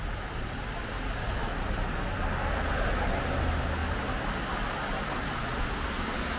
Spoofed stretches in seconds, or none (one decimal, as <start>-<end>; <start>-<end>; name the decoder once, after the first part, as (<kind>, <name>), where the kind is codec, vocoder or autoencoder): none